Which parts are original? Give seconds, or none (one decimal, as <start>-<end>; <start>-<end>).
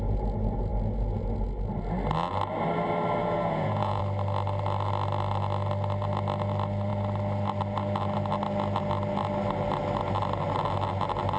0.0-3.2; 4.0-11.4